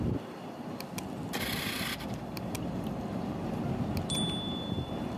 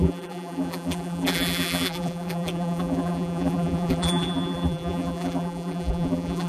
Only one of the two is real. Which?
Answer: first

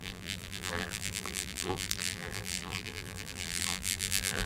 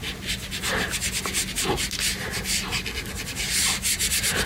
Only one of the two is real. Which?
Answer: second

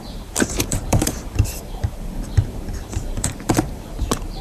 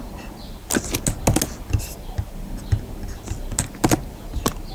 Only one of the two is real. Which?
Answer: second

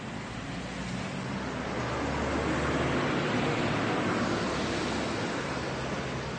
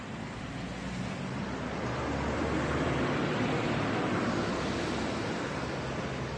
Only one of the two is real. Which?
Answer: first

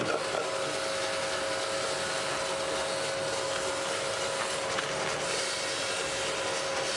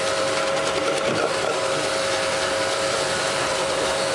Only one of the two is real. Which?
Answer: first